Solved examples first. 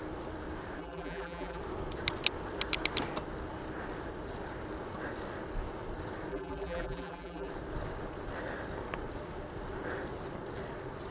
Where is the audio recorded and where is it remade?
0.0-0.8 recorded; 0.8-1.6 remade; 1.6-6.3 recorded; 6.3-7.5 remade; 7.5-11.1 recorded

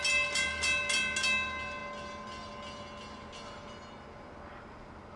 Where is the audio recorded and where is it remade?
0.0-5.2 recorded